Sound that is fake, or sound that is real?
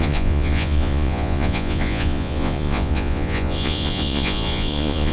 fake